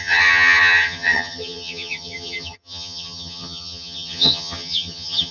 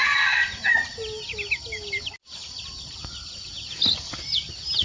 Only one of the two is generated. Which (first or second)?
first